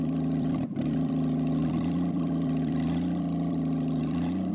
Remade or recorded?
remade